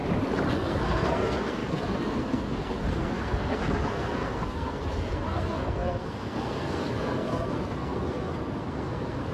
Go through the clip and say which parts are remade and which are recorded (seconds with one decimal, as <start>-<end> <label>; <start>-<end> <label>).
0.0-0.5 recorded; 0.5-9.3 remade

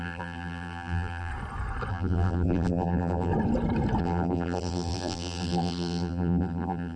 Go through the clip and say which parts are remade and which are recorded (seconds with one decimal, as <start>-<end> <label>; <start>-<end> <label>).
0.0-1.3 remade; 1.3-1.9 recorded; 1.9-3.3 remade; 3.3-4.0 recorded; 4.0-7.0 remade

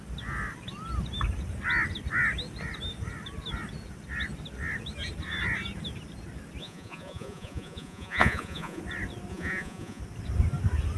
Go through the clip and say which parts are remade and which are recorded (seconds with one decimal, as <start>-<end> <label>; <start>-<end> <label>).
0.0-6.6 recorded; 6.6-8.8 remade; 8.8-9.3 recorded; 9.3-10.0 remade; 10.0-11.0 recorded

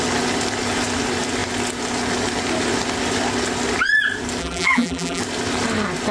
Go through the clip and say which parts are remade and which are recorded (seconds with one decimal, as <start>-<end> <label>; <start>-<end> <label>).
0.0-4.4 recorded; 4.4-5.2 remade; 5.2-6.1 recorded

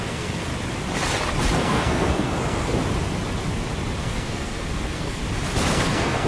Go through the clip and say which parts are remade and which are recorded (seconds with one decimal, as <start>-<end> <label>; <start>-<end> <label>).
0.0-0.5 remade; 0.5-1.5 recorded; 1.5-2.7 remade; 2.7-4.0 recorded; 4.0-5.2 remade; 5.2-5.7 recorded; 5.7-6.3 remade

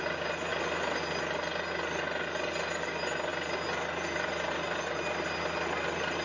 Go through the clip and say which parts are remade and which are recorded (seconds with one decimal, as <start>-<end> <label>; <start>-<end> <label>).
0.0-6.2 recorded

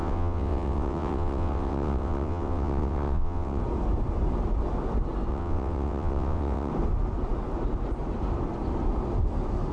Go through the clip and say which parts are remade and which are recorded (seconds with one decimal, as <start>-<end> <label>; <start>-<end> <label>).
0.0-3.6 remade; 3.6-5.3 recorded; 5.3-6.7 remade; 6.7-9.7 recorded